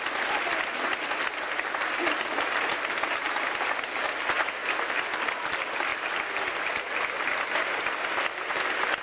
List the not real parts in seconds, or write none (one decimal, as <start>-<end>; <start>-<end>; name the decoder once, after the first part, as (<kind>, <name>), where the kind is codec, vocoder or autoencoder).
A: none